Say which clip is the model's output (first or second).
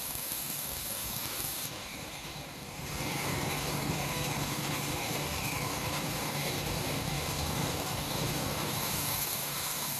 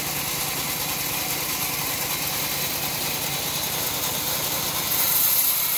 first